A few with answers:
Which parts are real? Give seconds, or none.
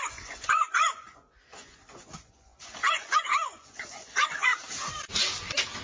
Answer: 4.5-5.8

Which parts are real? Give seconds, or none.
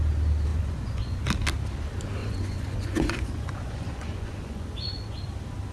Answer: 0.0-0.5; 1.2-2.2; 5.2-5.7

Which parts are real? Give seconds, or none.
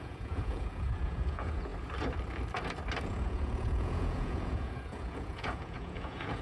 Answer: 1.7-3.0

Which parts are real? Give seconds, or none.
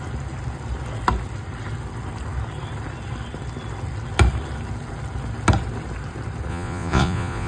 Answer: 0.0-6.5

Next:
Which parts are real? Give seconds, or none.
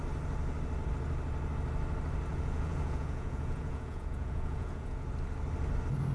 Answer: 0.0-2.3; 5.1-6.1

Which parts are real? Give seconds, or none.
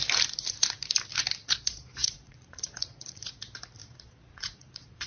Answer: 0.0-1.4; 3.3-3.8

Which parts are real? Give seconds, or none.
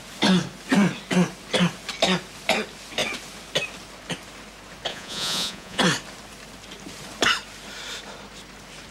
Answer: 0.0-4.9; 5.8-8.9